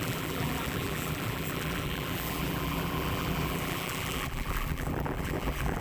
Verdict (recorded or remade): remade